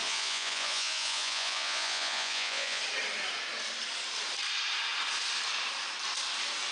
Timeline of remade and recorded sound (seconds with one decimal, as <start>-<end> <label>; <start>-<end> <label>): 0.0-2.8 remade; 2.8-6.7 recorded